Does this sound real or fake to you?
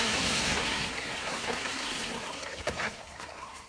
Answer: fake